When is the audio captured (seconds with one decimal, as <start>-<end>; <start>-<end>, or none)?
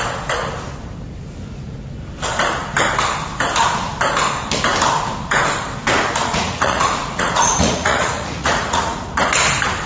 0.0-6.2; 9.1-9.9